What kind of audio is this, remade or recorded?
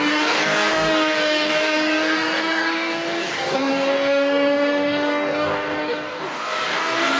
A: remade